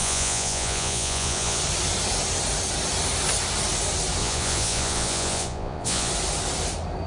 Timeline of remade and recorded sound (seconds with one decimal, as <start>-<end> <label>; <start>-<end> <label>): 0.0-1.6 remade; 1.6-4.2 recorded; 4.2-6.1 remade; 6.1-7.1 recorded